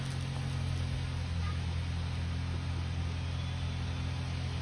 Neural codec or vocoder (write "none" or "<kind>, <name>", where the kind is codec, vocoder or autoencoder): none